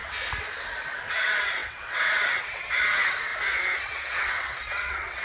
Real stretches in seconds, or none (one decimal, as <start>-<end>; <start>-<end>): 0.0-1.1; 3.3-3.8